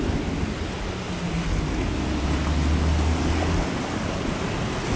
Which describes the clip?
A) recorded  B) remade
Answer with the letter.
A